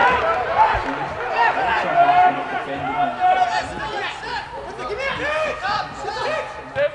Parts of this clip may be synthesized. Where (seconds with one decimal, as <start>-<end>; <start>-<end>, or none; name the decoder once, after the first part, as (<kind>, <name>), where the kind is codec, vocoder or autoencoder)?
none